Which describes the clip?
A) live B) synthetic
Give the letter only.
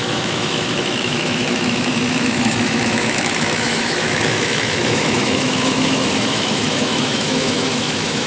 B